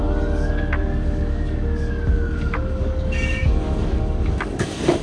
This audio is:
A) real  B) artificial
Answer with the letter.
B